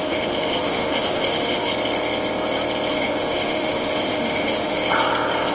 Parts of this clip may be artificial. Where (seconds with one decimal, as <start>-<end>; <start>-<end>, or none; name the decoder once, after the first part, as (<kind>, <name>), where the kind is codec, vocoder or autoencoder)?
0.0-1.7 (autoencoder, DAC-VAE); 2.9-4.8